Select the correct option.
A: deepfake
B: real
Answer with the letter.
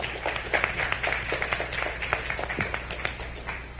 B